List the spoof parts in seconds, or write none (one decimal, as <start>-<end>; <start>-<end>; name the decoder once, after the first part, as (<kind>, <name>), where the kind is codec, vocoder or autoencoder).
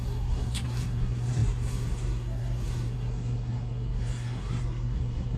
0.0-5.4 (codec, SNAC)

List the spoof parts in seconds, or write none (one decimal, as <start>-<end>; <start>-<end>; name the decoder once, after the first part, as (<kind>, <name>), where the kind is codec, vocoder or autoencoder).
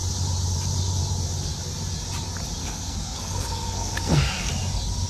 2.6-4.5 (codec, SNAC)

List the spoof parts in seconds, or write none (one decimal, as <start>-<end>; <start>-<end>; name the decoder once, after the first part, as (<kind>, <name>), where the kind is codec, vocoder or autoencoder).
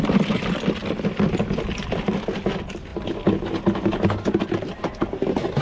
none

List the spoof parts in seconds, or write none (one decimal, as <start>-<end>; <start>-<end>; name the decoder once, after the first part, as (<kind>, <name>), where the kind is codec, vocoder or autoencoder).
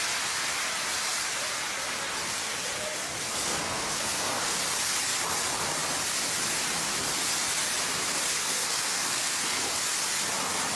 3.2-4.6 (codec, SNAC); 8.4-9.7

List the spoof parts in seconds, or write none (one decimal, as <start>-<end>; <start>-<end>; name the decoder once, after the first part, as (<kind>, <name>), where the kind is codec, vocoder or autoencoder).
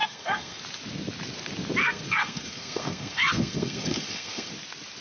0.0-0.6 (codec, SNAC); 1.8-4.5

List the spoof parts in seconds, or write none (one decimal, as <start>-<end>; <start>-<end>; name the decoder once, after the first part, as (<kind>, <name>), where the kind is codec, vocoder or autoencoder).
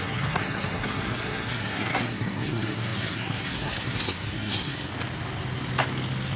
0.0-4.9 (codec, SNAC)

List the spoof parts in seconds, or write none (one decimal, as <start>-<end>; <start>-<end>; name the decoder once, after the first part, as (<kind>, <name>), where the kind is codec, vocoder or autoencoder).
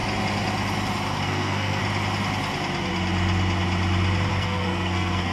1.2-1.8 (codec, SNAC); 4.3-5.3